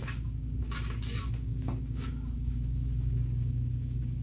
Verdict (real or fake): fake